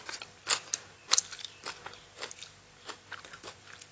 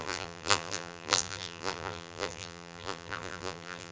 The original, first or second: first